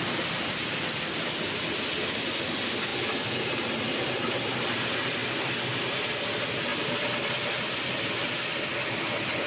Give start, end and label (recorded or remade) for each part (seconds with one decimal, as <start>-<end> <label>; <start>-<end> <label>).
0.0-9.5 recorded